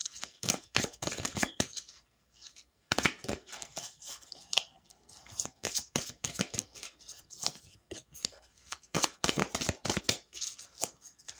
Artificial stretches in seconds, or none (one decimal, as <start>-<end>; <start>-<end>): 0.0-9.4; 10.0-11.4